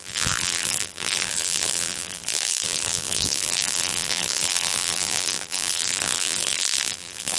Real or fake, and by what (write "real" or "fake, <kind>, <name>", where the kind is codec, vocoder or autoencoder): fake, vocoder, BigVGAN v2